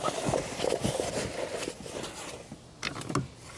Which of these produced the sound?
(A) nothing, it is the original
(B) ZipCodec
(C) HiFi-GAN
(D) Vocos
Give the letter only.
A